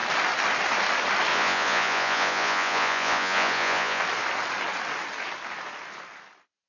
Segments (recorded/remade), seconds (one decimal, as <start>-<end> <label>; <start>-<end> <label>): 0.0-1.3 recorded; 1.3-4.0 remade; 4.0-6.7 recorded